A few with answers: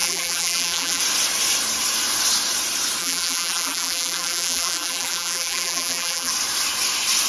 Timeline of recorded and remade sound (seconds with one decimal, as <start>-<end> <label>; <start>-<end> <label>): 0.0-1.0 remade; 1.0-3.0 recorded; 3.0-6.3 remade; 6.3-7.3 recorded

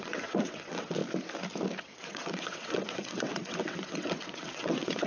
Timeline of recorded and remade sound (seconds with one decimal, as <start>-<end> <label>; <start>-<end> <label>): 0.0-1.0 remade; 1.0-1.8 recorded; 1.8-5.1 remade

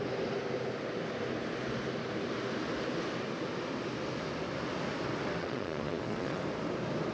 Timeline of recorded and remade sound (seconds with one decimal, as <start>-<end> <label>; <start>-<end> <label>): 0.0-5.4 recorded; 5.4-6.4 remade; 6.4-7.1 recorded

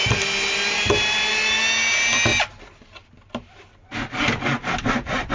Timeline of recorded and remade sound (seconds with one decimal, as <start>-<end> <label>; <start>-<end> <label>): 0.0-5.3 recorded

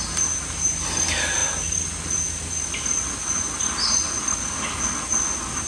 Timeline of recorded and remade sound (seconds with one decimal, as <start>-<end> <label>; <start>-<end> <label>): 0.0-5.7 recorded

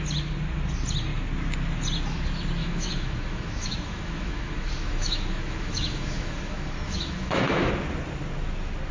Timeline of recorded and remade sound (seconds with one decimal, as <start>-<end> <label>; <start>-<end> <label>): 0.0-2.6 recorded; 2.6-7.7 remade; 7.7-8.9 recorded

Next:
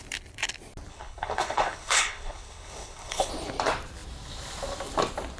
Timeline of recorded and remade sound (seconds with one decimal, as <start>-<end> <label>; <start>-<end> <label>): 0.0-0.9 recorded; 0.9-3.3 remade; 3.3-5.4 recorded

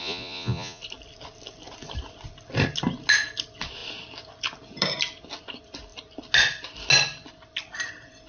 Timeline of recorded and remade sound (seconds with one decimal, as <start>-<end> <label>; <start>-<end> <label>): 0.0-0.8 remade; 0.8-8.3 recorded